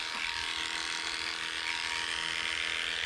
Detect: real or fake real